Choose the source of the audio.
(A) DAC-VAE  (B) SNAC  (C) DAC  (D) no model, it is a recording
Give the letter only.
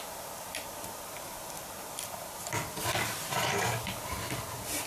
D